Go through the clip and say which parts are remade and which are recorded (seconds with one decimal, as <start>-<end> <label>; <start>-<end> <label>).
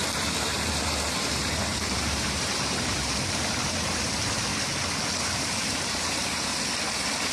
0.0-4.5 remade; 4.5-5.3 recorded; 5.3-6.5 remade; 6.5-7.3 recorded